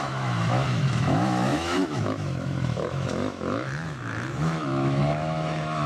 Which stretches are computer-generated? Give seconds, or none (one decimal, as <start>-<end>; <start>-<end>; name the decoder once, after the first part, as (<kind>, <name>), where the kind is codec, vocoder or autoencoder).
0.0-5.9 (autoencoder, DAC-VAE)